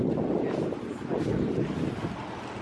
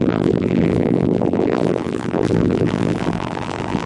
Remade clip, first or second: second